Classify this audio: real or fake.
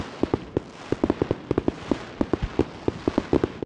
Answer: real